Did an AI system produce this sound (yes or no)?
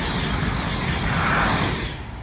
no